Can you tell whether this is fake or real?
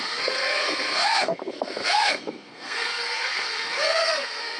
fake